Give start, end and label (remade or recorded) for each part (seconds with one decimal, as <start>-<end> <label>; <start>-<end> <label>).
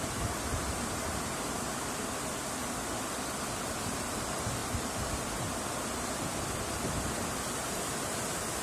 0.0-8.6 remade